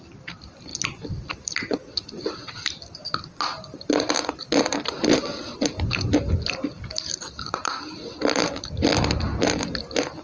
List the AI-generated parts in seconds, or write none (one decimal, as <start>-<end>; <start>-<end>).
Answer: none